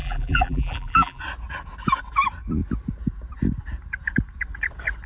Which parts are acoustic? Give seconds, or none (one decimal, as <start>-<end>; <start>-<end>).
1.2-5.1